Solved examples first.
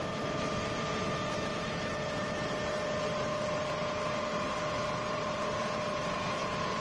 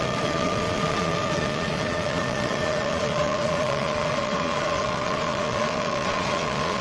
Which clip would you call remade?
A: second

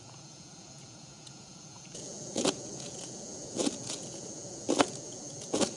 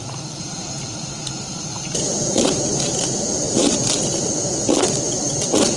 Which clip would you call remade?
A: first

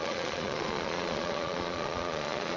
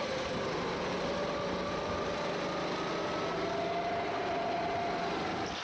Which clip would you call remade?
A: first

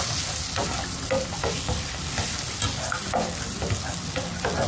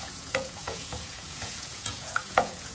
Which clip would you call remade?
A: second